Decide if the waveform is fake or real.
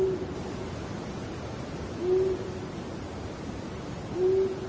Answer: real